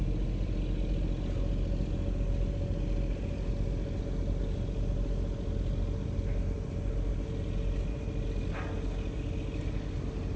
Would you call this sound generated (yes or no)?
no